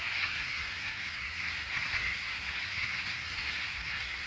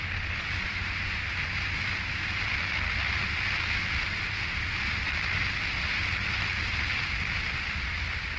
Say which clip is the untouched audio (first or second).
second